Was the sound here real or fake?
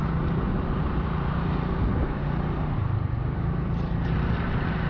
fake